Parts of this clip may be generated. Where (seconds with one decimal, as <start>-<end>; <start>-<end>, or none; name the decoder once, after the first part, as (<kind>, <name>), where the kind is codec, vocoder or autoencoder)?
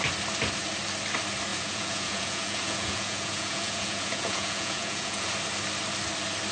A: 1.5-5.3 (vocoder, Vocos)